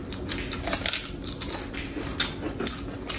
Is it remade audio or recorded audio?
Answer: recorded